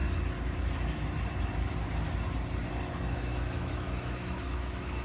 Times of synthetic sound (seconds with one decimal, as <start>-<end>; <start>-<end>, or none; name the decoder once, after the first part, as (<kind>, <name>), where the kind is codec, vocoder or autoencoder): 3.0-5.0 (autoencoder, DAC-VAE)